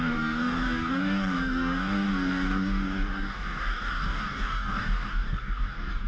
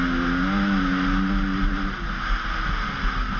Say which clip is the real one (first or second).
second